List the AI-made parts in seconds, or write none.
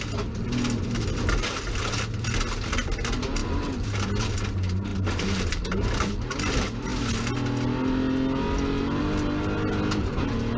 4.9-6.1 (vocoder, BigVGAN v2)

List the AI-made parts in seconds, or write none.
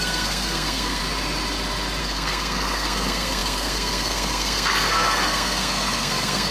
0.0-1.0 (codec, SNAC); 2.0-6.5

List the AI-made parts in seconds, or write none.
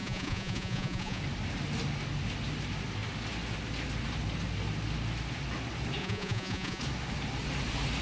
0.0-1.2 (vocoder, Vocos); 6.0-6.8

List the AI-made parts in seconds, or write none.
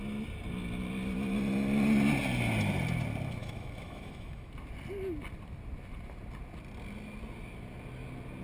3.4-4.5 (autoencoder, DAC-VAE)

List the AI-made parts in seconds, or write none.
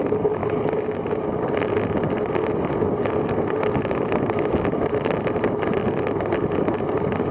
none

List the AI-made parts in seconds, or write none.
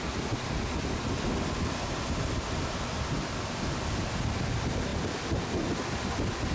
none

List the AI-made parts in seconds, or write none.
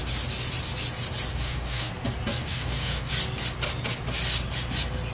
1.3-1.9 (codec, DAC); 2.4-3.1